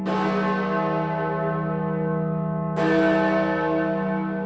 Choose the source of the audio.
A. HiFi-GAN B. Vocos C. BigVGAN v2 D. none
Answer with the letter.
D